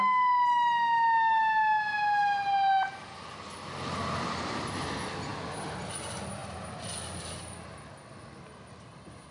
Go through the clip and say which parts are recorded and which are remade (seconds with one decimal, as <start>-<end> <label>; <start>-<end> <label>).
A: 0.0-9.3 recorded